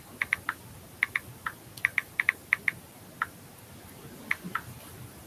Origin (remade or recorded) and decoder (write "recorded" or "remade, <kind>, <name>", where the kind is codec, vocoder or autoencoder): recorded